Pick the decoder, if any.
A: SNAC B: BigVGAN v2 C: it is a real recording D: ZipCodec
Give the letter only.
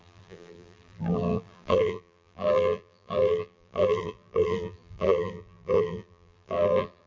B